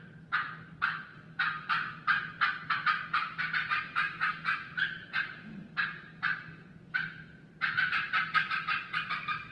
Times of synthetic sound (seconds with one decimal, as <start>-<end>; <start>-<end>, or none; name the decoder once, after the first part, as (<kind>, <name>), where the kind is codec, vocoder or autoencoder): none